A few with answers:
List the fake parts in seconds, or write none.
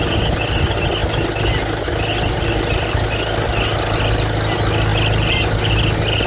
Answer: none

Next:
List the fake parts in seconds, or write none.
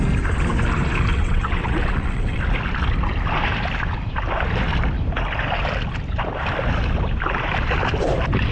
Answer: 1.1-2.4 (vocoder, WaveNeXt)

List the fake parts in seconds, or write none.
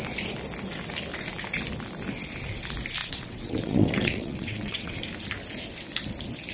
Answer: 3.0-4.9 (vocoder, WaveNeXt)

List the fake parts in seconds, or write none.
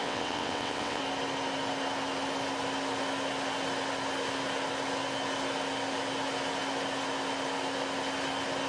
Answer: 0.0-1.0 (vocoder, WaveNeXt)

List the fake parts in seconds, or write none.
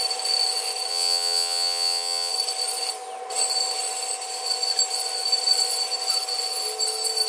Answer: 0.9-2.3 (vocoder, WaveNeXt)